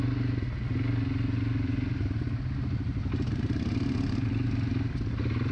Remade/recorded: recorded